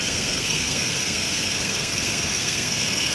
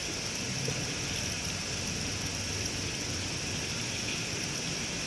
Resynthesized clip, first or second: first